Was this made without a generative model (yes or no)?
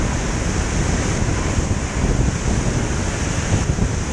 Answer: yes